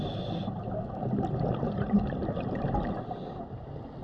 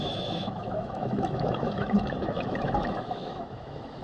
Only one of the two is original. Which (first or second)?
first